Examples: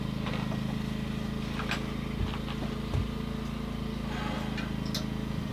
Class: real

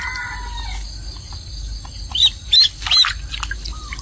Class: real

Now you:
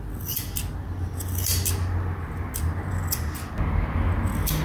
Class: real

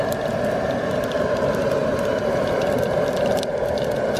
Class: real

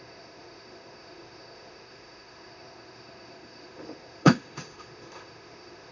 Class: fake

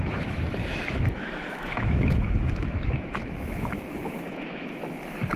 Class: fake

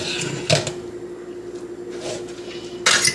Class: real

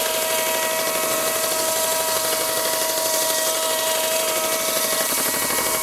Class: real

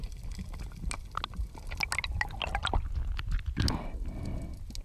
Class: real